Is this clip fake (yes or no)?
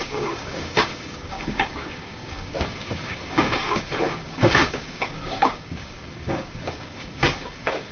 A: yes